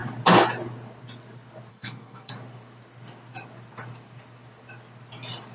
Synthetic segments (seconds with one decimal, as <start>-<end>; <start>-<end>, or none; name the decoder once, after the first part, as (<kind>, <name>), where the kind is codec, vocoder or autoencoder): 1.7-2.3 (codec, SNAC)

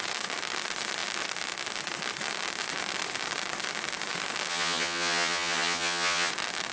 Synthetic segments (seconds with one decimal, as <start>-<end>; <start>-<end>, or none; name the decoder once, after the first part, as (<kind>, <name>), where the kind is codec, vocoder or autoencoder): 4.5-6.3 (vocoder, HiFi-GAN)

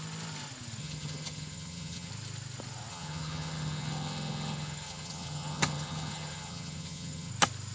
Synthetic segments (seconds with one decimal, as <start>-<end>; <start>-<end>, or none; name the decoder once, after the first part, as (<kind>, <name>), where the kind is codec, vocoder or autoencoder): 0.8-2.1 (vocoder, HiFi-GAN); 2.9-7.3